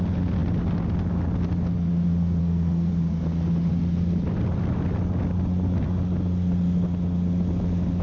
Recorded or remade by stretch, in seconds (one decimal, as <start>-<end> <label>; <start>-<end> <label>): 0.0-2.4 recorded; 2.4-2.9 remade; 2.9-8.0 recorded